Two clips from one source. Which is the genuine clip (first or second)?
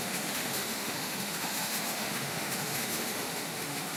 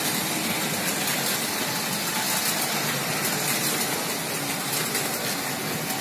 second